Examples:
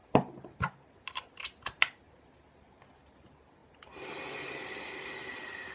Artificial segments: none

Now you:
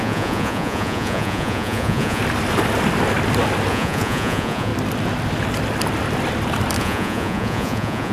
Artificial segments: 0.0-2.2 (vocoder, Vocos); 3.7-4.7; 6.8-8.1

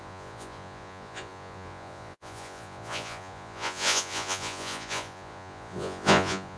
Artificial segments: 0.0-6.6 (vocoder, Vocos)